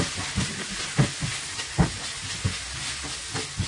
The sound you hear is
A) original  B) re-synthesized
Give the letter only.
A